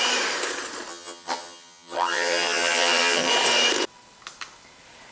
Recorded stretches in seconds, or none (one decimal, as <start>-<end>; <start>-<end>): 0.0-0.9; 3.3-5.1